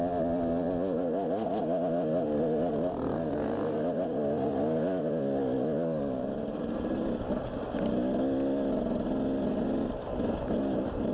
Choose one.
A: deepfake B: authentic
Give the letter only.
B